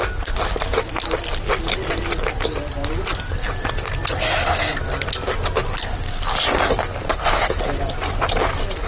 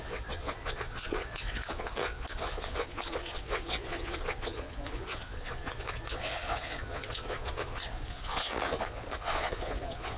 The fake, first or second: second